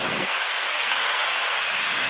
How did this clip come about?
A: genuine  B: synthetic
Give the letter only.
B